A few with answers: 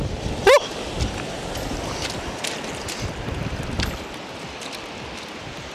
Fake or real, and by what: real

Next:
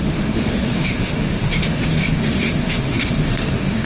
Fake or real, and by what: fake, autoencoder, DAC-VAE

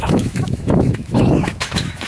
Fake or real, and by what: fake, autoencoder, DAC-VAE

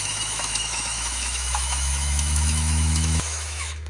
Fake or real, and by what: fake, autoencoder, DAC-VAE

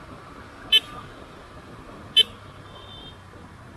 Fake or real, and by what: real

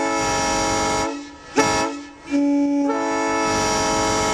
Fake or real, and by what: real